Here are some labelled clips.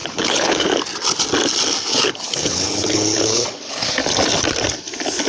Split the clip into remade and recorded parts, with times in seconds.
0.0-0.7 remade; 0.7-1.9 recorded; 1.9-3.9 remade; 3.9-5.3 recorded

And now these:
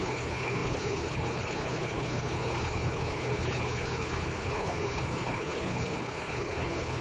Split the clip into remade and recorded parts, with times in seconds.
0.0-7.0 remade

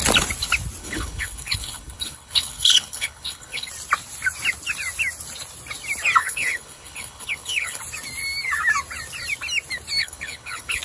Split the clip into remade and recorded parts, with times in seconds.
0.0-0.8 recorded; 0.8-3.7 remade; 3.7-6.2 recorded; 6.2-7.8 remade; 7.8-10.0 recorded; 10.0-10.8 remade

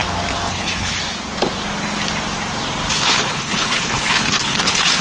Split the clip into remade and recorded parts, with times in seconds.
0.0-0.5 recorded; 0.5-1.0 remade; 1.0-2.9 recorded; 2.9-5.0 remade